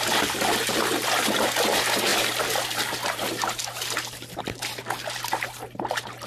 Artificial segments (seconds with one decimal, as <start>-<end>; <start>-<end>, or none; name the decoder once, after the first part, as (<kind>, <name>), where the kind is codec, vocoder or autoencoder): none